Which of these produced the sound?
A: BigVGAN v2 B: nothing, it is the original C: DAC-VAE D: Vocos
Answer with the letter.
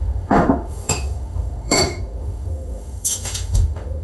C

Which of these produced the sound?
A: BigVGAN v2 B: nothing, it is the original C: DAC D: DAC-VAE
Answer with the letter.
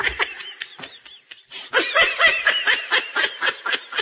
B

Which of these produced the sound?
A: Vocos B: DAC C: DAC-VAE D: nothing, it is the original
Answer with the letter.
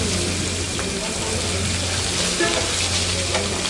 D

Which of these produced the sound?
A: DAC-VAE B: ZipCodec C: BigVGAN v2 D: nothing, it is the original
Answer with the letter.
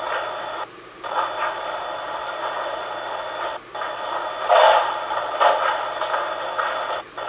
D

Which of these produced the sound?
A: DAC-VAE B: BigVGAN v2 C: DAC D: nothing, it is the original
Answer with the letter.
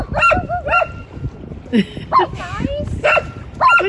D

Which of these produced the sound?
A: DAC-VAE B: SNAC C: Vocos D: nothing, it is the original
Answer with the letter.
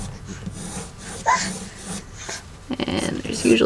D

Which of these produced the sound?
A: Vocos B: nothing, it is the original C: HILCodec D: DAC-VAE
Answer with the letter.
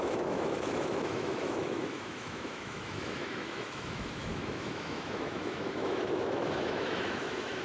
D